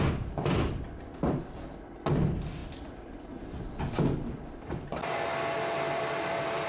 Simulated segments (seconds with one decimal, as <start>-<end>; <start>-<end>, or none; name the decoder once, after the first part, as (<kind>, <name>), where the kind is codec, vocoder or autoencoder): none